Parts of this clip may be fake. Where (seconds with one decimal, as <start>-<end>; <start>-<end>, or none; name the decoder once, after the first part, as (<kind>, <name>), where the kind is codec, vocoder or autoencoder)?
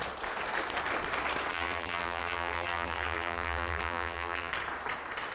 1.5-4.5 (vocoder, BigVGAN v2)